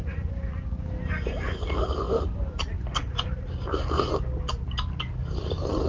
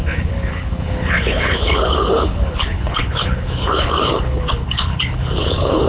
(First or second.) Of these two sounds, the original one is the first